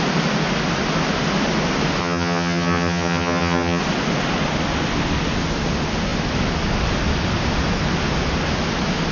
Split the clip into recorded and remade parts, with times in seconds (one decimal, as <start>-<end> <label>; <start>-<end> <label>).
0.0-2.0 recorded; 2.0-3.8 remade; 3.8-9.1 recorded